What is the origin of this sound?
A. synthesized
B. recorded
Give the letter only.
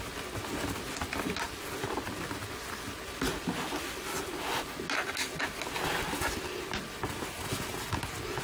B